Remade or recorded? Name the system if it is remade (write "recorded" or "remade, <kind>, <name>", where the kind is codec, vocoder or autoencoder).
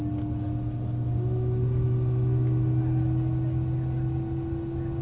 recorded